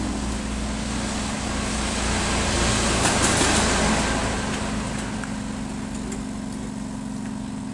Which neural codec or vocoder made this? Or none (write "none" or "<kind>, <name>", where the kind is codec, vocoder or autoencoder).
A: none